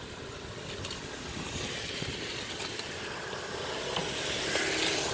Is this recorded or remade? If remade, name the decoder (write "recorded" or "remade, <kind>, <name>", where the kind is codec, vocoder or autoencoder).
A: recorded